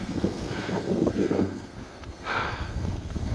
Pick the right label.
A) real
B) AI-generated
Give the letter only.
B